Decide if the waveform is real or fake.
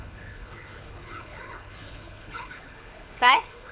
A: fake